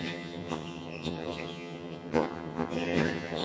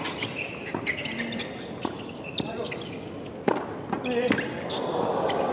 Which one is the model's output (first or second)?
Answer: first